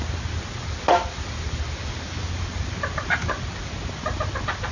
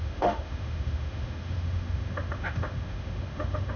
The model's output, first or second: second